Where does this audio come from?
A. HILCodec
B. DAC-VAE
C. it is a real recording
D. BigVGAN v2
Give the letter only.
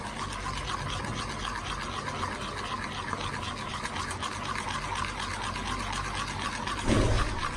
C